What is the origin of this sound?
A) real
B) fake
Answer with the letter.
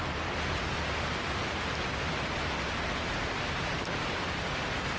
A